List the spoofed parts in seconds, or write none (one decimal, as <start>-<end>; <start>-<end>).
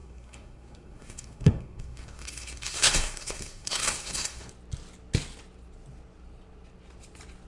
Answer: 0.0-4.5